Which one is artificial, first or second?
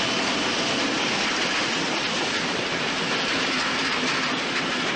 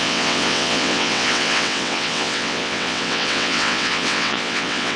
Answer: second